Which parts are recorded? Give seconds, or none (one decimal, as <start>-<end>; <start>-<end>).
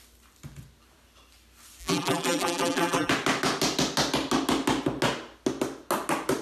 0.0-1.8; 3.1-6.4